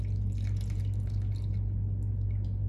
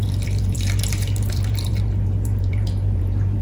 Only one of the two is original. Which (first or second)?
first